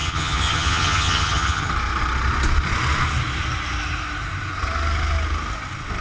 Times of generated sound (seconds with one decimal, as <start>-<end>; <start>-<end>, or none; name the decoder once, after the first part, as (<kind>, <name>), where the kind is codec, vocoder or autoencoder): 0.0-1.7 (vocoder, HiFi-GAN)